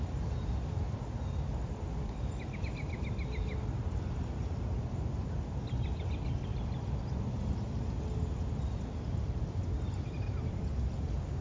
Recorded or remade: recorded